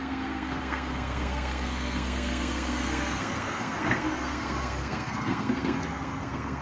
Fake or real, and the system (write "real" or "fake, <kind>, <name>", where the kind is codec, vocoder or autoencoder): fake, codec, SNAC